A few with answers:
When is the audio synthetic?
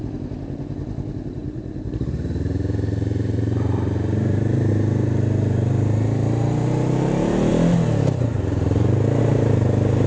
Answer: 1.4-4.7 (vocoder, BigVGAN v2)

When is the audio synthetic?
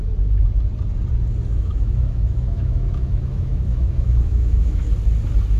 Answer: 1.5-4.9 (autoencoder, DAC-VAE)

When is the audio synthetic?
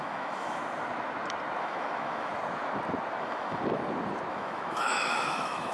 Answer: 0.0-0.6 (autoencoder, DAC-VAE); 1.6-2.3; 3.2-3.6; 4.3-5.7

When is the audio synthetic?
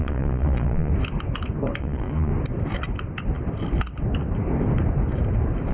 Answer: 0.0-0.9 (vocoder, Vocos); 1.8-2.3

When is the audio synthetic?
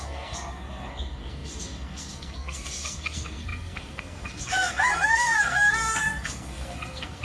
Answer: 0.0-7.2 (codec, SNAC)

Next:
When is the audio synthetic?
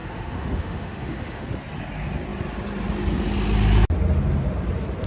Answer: 0.0-1.4 (autoencoder, DAC-VAE)